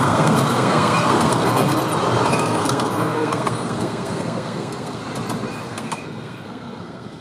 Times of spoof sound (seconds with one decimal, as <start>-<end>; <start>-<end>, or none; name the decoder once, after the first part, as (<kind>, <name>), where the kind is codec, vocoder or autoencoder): 0.0-1.8 (codec, SNAC); 2.3-5.0; 5.6-7.2